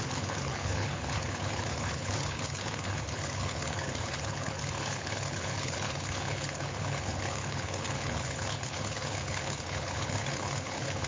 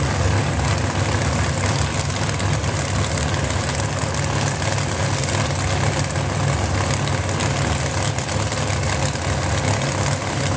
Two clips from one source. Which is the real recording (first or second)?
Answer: second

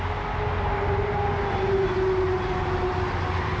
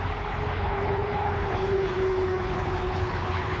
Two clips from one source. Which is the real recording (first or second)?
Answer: first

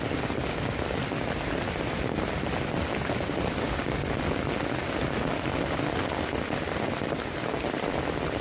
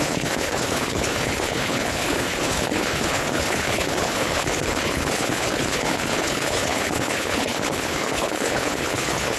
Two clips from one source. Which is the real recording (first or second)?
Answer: first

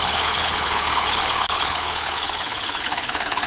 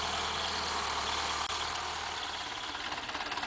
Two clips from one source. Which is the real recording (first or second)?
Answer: second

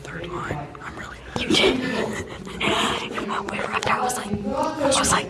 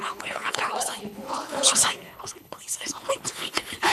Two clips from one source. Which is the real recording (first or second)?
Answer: first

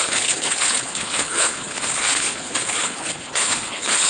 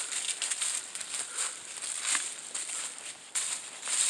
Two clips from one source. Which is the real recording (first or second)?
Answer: second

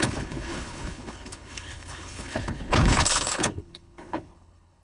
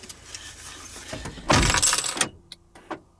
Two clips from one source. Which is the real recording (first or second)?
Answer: second